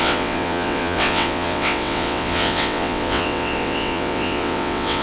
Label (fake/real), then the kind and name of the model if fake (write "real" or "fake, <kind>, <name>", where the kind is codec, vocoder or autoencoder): fake, vocoder, WaveNeXt